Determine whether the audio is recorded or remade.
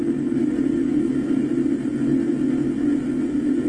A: recorded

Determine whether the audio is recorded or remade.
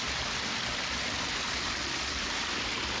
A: recorded